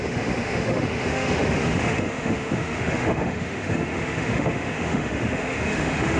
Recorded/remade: remade